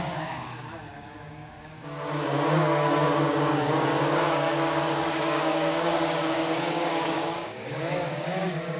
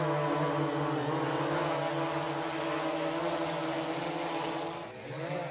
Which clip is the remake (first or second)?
first